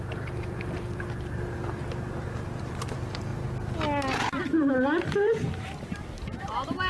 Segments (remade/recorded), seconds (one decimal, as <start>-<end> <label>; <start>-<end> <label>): 0.0-3.3 remade; 3.3-4.2 recorded; 4.2-6.9 remade